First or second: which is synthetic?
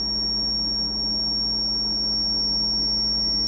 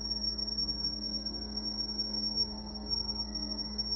second